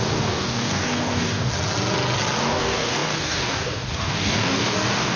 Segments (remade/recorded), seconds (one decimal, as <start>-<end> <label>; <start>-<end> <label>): 0.0-1.5 remade; 1.5-2.4 recorded; 2.4-5.2 remade